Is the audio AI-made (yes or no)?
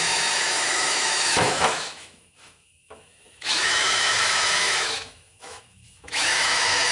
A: yes